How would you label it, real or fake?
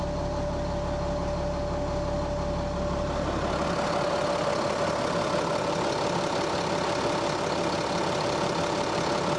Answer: real